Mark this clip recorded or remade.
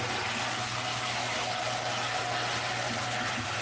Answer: recorded